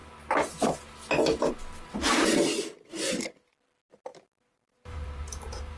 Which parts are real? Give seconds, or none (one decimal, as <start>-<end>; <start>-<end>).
0.0-4.1